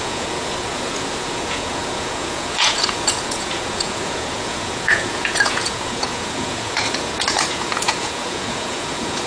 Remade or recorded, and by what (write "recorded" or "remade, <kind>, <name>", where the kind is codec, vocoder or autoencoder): remade, vocoder, Vocos